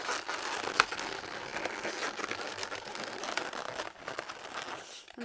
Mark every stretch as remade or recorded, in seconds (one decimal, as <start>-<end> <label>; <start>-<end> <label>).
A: 0.0-5.2 recorded